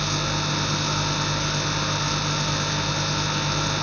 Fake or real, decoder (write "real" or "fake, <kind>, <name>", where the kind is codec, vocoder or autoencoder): real